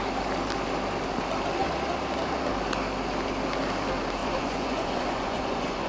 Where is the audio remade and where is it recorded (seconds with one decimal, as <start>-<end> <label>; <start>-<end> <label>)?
0.0-4.2 recorded; 4.2-5.9 remade